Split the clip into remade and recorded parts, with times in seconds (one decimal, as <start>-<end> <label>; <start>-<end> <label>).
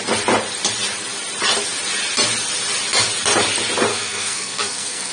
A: 0.0-3.9 recorded; 3.9-5.1 remade